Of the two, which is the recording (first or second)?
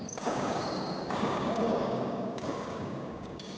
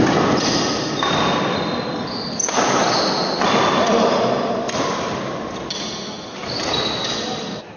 second